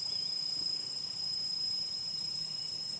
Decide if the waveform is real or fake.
real